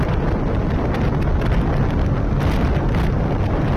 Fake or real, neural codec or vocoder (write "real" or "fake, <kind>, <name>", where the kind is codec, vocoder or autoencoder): real